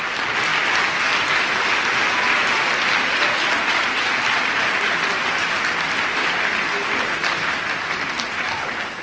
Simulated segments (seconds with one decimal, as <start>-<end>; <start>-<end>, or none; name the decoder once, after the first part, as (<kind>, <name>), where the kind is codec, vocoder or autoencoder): none